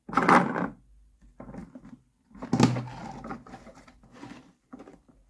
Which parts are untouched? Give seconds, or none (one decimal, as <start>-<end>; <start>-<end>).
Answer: 0.0-5.3